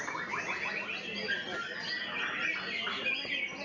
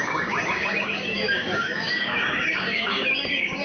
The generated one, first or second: second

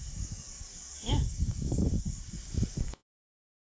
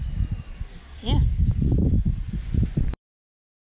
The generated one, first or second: first